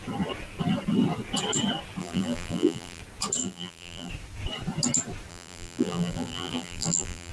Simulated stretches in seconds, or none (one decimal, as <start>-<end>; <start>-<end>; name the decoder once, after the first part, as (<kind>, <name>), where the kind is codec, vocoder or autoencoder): 2.0-3.0 (vocoder, BigVGAN v2); 3.4-4.1; 5.3-7.3